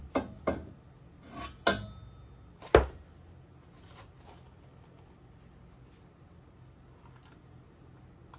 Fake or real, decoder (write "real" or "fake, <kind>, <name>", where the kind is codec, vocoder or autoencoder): real